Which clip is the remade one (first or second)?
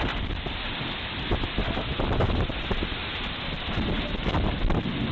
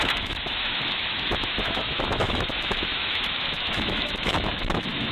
second